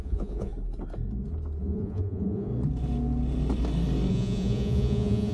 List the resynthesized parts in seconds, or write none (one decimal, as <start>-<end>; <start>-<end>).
0.0-0.5; 1.6-2.5; 4.1-5.3